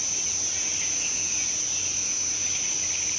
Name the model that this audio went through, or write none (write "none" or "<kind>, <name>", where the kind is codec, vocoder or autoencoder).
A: none